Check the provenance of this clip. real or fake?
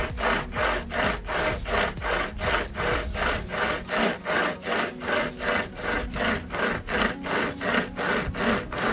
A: real